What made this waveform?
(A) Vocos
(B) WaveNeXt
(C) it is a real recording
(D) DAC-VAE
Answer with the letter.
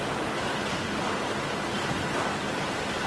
C